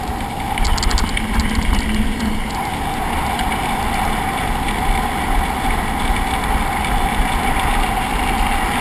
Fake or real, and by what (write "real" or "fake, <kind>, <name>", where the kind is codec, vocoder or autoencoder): real